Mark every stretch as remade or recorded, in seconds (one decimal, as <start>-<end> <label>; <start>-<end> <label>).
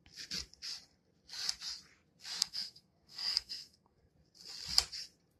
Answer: 0.0-2.4 recorded; 2.4-4.1 remade; 4.1-5.4 recorded